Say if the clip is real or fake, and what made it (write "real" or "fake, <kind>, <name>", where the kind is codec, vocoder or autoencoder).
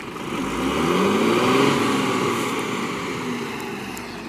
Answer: real